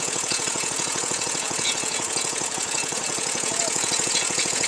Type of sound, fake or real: fake